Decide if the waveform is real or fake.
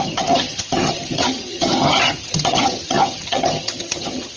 fake